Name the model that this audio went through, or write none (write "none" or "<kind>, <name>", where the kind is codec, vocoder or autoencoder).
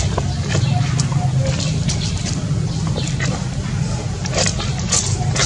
none